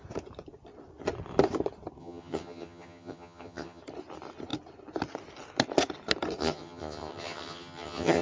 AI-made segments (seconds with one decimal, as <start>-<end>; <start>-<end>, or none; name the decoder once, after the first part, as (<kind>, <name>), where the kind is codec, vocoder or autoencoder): 2.0-3.8 (vocoder, HiFi-GAN); 6.4-8.2